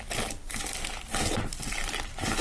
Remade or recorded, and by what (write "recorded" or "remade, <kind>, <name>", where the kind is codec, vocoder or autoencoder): recorded